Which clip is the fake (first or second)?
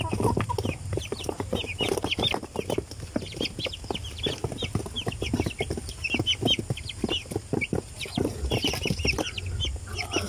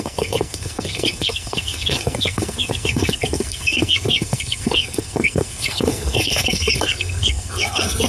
second